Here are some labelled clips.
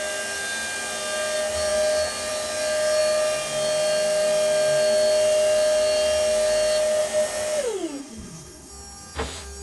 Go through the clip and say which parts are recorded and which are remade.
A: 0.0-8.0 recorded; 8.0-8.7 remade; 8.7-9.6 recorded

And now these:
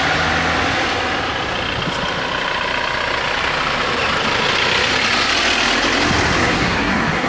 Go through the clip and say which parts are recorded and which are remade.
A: 0.0-6.4 recorded; 6.4-7.3 remade